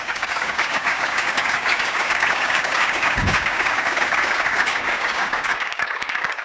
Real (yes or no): no